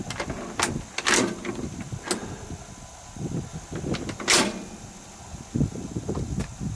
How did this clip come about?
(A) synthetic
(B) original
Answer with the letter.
B